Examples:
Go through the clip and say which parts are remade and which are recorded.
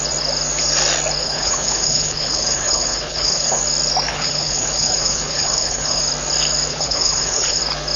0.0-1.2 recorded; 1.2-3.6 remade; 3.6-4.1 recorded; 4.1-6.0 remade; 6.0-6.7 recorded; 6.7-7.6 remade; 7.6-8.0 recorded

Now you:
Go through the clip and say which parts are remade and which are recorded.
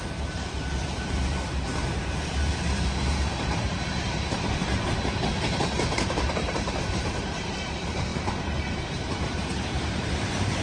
0.0-10.6 remade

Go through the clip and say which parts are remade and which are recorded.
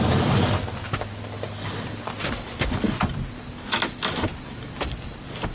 0.0-5.5 recorded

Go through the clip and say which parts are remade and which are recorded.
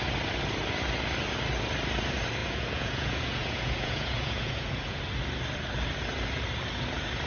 0.0-2.4 recorded; 2.4-5.0 remade; 5.0-7.3 recorded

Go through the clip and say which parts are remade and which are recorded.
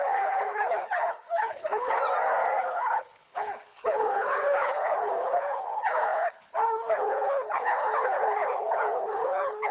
0.0-2.0 remade; 2.0-2.6 recorded; 2.6-9.7 remade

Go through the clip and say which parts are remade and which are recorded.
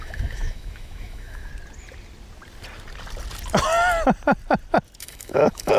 0.0-1.5 remade; 1.5-5.0 recorded; 5.0-5.8 remade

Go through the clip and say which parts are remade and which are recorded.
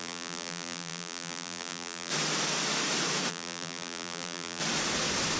0.0-2.1 remade; 2.1-3.3 recorded; 3.3-4.6 remade; 4.6-5.4 recorded